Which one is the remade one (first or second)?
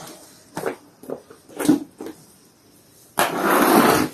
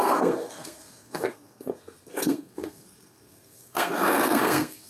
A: second